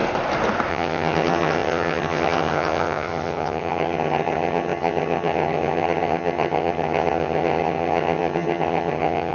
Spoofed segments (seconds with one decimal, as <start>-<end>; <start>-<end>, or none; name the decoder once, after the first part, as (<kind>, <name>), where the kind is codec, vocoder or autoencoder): 0.7-9.3 (vocoder, HiFi-GAN)